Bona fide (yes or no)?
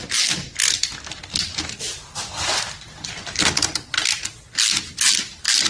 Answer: yes